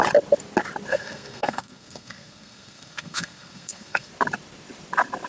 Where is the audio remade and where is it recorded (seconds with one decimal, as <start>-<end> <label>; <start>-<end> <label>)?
0.0-0.9 recorded; 0.9-4.1 remade; 4.1-5.3 recorded